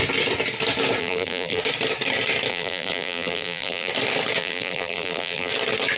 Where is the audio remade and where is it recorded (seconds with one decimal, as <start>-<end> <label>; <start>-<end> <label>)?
0.0-1.0 recorded; 1.0-1.6 remade; 1.6-2.5 recorded; 2.5-3.9 remade; 3.9-4.4 recorded; 4.4-5.5 remade; 5.5-6.0 recorded